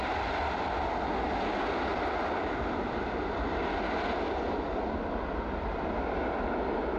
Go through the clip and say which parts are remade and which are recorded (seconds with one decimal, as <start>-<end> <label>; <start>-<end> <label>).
0.0-7.0 recorded